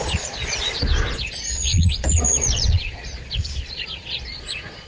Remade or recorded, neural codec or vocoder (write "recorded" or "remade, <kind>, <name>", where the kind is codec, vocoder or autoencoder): remade, vocoder, Vocos